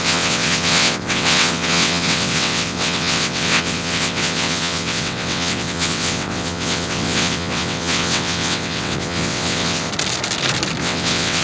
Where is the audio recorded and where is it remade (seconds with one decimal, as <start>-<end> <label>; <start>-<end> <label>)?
0.0-9.9 remade; 9.9-10.8 recorded; 10.8-11.4 remade